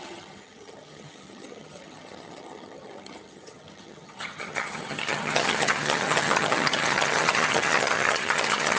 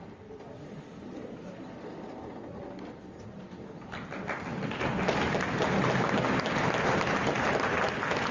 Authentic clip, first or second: second